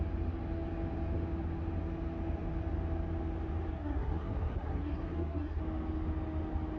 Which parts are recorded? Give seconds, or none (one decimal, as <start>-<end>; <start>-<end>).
0.0-3.7; 5.6-6.8